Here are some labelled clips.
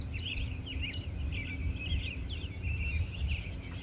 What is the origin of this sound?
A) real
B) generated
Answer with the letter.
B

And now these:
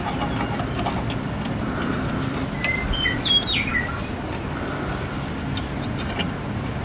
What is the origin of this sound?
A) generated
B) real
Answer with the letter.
B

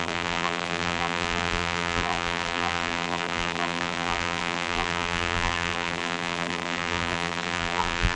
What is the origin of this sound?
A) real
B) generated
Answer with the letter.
B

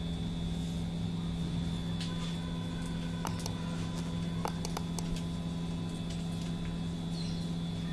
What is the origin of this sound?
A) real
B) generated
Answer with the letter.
A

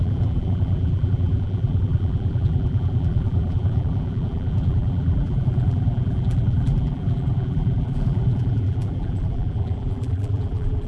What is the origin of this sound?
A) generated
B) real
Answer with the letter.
A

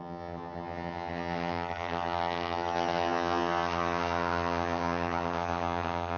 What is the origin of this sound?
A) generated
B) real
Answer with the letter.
A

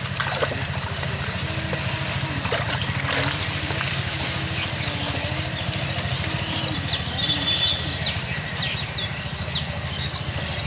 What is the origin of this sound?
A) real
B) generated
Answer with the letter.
A